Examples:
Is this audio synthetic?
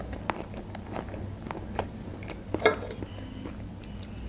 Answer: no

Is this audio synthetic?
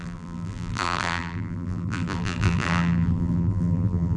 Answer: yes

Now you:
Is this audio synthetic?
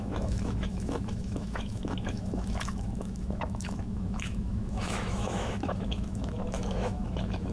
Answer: yes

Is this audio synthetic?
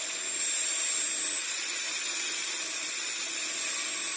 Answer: no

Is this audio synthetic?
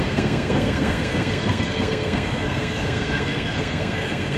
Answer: yes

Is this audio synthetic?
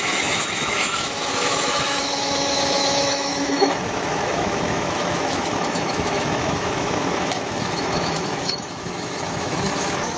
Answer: yes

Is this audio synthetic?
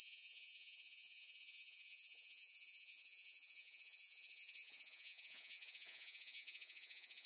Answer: yes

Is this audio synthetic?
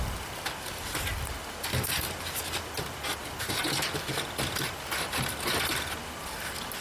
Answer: no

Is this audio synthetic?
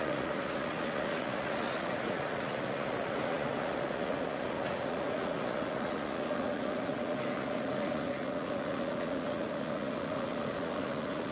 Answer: yes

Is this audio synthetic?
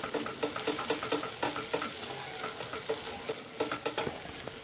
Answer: no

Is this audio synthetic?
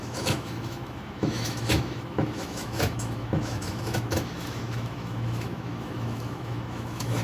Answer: yes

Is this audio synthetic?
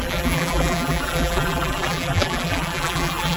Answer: yes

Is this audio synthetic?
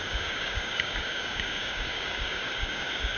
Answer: yes